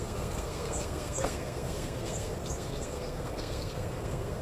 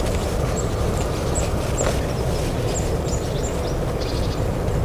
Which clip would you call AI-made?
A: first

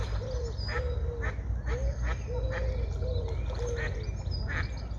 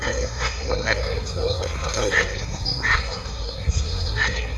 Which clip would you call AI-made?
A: second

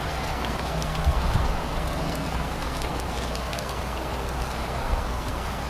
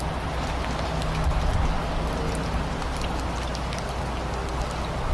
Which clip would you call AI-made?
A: first